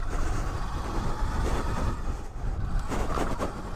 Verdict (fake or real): real